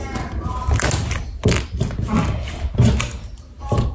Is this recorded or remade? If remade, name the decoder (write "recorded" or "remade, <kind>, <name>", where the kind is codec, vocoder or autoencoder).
recorded